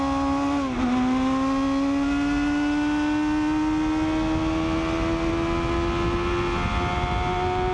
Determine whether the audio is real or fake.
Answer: real